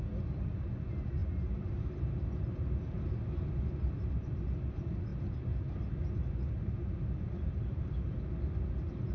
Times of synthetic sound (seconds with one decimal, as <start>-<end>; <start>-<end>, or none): 1.2-1.9